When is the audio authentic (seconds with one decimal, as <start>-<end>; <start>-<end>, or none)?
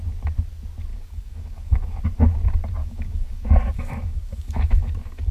0.0-0.9; 2.0-2.8